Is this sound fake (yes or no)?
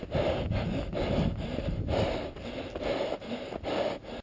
no